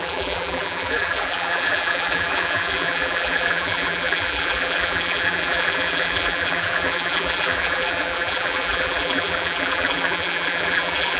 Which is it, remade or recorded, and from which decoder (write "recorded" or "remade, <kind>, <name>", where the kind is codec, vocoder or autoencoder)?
remade, vocoder, BigVGAN v2